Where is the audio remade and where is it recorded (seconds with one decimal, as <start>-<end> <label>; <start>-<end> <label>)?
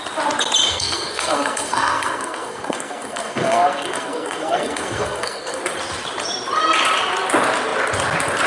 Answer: 0.0-0.7 recorded; 0.7-5.6 remade; 5.6-8.5 recorded